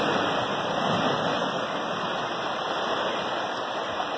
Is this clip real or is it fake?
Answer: real